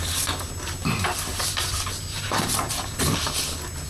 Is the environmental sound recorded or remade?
recorded